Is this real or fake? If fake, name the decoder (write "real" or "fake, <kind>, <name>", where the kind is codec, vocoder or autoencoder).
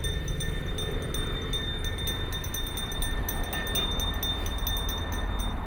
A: real